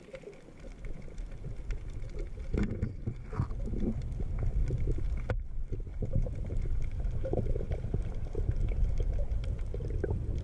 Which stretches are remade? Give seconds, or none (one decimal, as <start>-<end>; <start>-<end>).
5.9-8.5